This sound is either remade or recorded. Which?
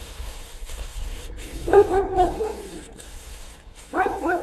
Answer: remade